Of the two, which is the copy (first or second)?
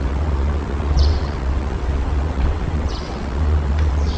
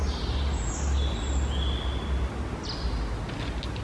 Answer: first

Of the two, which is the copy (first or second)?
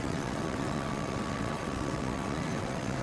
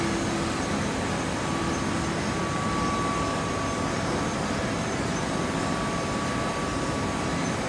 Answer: first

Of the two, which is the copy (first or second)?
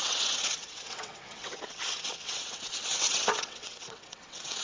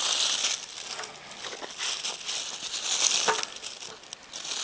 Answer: first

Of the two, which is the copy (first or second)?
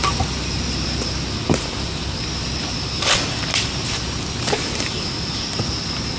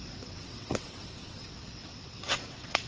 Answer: second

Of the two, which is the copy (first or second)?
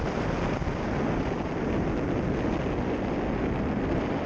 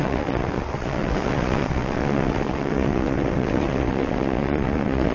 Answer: second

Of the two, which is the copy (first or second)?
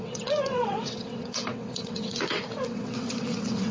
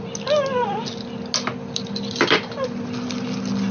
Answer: first